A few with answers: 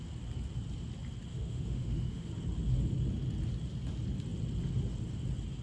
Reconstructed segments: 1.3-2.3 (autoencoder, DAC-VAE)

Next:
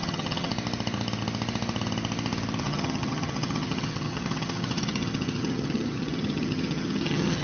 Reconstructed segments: 0.0-0.5 (vocoder, HiFi-GAN); 2.6-7.4

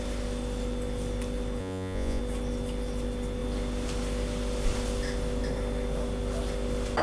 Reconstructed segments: 1.6-2.2 (vocoder, Vocos)